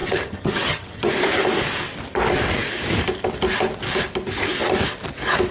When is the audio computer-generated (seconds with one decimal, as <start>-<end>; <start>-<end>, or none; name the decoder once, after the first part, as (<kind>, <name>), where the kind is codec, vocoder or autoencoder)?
0.0-1.1 (vocoder, HiFi-GAN)